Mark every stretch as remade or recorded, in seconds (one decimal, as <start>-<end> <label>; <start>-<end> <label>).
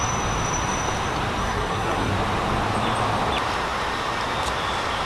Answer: 0.0-1.4 recorded; 1.4-2.1 remade; 2.1-5.1 recorded